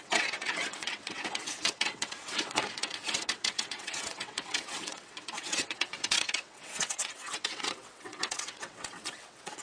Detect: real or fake fake